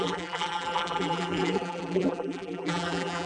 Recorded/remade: remade